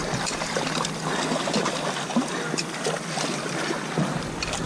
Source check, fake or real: real